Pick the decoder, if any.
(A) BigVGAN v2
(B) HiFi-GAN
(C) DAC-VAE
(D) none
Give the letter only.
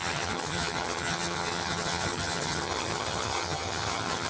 B